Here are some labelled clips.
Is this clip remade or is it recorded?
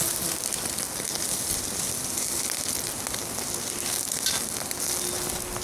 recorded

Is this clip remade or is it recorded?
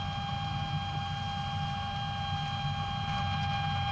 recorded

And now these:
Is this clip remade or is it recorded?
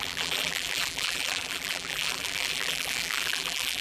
remade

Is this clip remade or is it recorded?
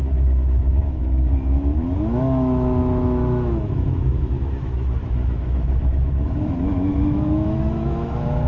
remade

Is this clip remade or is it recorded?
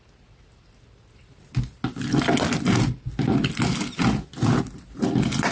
recorded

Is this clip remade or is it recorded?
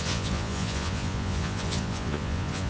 remade